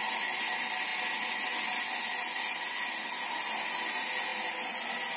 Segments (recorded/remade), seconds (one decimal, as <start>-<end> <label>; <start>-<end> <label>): 0.0-5.2 recorded